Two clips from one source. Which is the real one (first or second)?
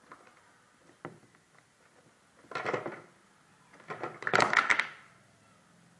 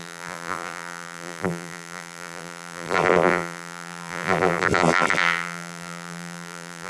first